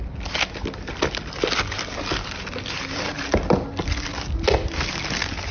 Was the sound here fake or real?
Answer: real